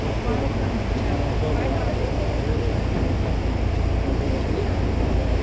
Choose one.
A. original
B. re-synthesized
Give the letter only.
A